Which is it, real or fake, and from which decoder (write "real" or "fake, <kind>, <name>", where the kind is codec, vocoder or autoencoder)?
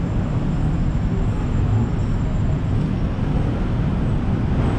real